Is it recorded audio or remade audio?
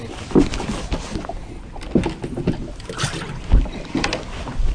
recorded